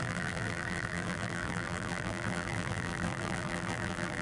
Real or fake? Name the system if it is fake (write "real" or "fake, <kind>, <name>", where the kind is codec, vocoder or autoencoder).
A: fake, vocoder, BigVGAN v2